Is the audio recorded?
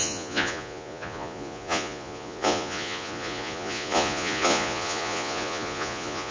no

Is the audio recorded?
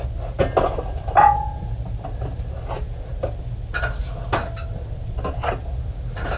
yes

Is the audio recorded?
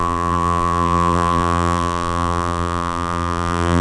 no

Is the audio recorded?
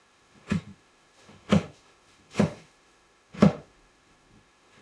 no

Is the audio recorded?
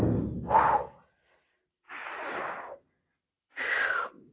yes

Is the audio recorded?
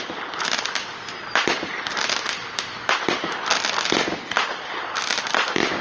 yes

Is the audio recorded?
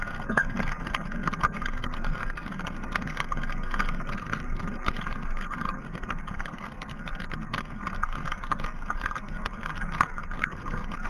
no